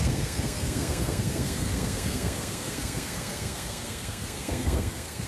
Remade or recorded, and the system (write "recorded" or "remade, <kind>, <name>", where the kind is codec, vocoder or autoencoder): remade, codec, SNAC